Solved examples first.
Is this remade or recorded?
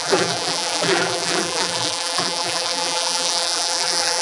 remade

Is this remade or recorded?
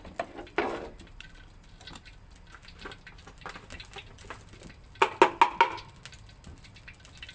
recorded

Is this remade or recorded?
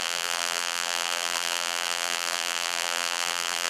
remade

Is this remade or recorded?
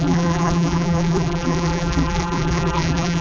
remade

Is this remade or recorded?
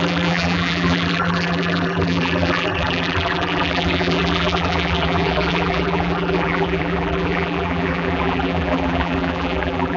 remade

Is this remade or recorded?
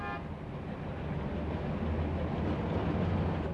recorded